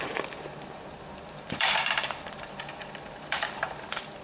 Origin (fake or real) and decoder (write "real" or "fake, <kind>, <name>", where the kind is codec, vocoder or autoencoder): fake, vocoder, BigVGAN v2